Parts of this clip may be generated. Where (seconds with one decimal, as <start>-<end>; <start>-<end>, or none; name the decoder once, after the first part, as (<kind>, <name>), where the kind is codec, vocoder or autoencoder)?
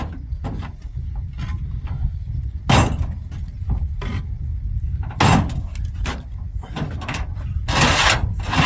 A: 1.5-2.4 (vocoder, BigVGAN v2); 4.5-5.0